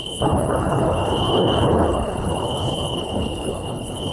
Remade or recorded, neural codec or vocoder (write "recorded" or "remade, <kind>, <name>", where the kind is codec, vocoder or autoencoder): remade, codec, HILCodec